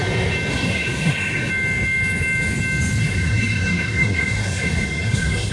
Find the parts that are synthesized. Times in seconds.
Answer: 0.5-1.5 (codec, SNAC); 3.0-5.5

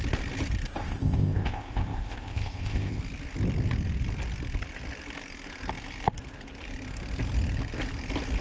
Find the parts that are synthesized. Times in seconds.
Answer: 0.8-3.0 (codec, ZipCodec)

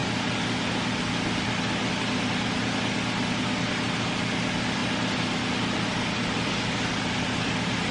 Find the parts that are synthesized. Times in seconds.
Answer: 0.0-7.9 (vocoder, BigVGAN v2)

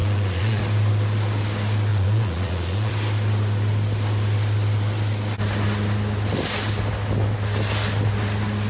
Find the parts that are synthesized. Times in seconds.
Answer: 0.0-0.6 (vocoder, Vocos); 1.9-2.9

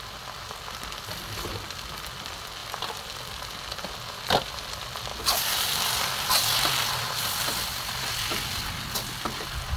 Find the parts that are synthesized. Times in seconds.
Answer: none

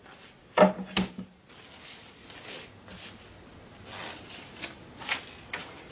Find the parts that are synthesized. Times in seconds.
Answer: none